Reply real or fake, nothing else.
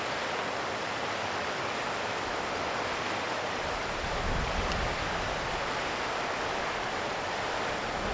real